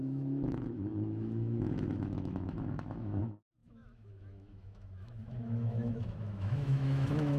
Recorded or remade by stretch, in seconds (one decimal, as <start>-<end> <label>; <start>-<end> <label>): 0.0-7.4 remade